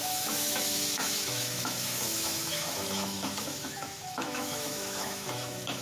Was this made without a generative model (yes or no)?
no